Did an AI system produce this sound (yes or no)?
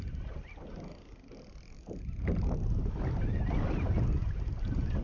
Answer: no